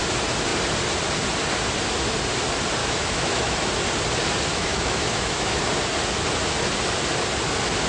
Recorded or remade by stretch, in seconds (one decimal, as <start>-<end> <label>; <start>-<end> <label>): 0.0-2.8 recorded; 2.8-3.7 remade; 3.7-4.5 recorded; 4.5-5.6 remade; 5.6-7.9 recorded